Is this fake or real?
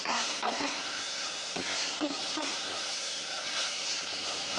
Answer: fake